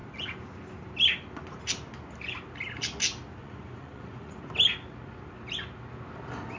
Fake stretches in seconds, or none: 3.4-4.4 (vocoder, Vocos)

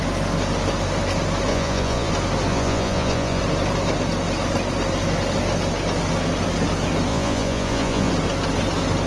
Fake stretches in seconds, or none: 1.5-2.1 (vocoder, Vocos); 2.5-3.4; 7.1-8.1

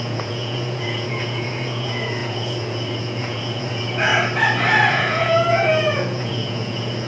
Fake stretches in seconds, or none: 0.0-4.1 (vocoder, Vocos); 4.9-7.1

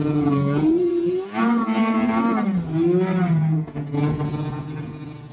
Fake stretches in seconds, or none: 0.0-1.8 (vocoder, Vocos); 3.3-5.3

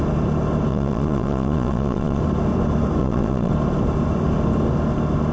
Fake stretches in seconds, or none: 0.7-2.2 (vocoder, Vocos); 3.0-3.5